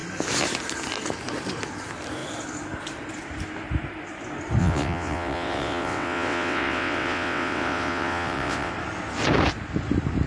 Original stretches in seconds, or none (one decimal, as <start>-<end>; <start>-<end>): 0.0-4.6; 8.7-10.3